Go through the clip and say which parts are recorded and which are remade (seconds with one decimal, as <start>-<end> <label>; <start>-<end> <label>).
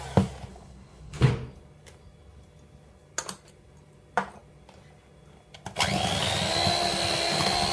0.0-0.5 recorded; 0.5-1.3 remade; 1.3-7.7 recorded